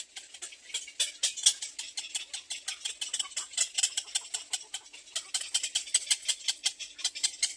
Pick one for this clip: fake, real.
real